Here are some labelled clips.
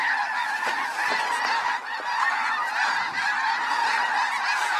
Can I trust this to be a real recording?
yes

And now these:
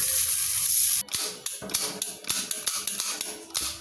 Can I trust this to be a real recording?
yes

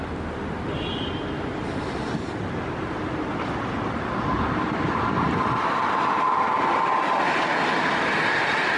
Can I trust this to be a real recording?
yes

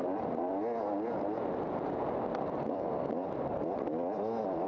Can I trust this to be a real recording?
yes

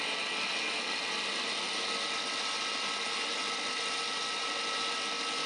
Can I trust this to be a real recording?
yes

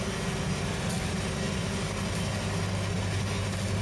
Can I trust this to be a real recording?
yes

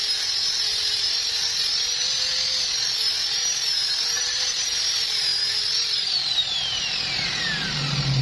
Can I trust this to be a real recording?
yes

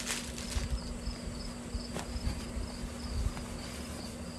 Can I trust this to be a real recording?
yes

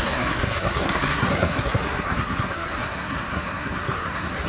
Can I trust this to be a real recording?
no